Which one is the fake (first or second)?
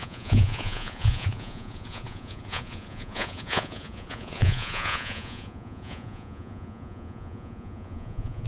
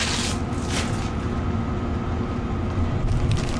first